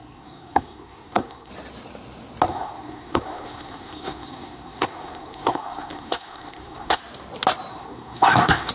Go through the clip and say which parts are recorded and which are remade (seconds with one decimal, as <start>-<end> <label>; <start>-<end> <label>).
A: 0.0-1.5 remade; 1.5-2.5 recorded; 2.5-7.0 remade; 7.0-7.7 recorded; 7.7-8.7 remade